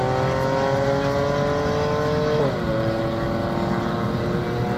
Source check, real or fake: real